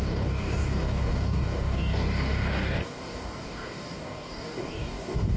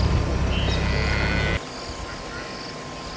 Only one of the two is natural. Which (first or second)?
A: second